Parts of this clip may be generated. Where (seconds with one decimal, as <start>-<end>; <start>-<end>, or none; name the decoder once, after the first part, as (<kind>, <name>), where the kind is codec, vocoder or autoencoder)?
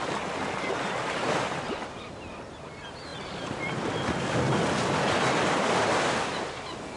none